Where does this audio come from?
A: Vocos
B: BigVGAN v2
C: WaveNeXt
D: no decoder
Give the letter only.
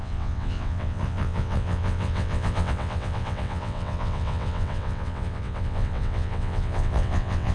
C